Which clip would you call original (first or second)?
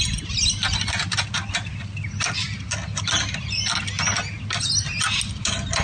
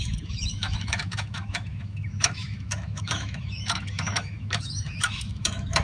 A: first